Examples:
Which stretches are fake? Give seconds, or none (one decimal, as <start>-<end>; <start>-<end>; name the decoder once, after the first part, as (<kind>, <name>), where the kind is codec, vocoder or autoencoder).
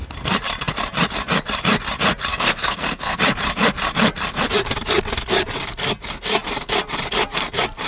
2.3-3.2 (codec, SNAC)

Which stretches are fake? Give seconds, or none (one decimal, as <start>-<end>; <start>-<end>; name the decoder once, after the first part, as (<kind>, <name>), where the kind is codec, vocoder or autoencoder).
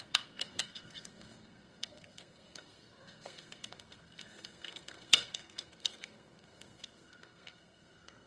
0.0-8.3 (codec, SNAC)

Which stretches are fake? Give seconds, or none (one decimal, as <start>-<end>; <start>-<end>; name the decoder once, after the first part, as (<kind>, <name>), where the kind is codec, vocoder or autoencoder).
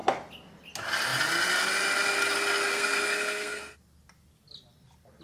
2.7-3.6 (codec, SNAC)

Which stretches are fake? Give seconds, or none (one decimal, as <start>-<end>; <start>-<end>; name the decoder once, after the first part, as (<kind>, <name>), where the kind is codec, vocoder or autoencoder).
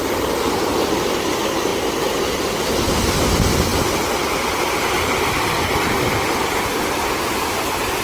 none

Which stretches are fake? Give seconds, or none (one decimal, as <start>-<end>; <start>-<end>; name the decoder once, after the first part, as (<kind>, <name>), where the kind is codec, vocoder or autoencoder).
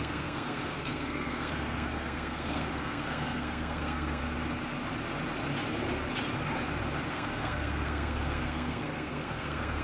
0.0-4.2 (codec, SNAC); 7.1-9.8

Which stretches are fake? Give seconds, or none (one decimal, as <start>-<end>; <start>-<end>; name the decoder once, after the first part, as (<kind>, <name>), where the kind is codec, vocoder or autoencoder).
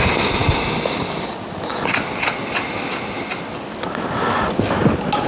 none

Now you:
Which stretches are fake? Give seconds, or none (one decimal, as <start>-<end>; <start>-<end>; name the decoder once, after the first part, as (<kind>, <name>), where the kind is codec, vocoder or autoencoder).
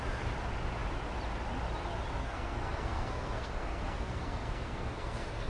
2.2-5.5 (codec, SNAC)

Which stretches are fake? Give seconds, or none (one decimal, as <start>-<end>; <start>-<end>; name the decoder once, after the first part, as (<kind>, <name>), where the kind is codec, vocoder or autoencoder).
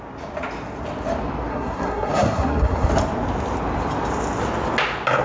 1.5-2.9 (codec, SNAC)